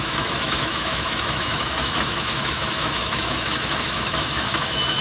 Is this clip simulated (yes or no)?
yes